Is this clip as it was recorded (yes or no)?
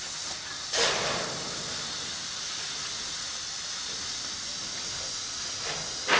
yes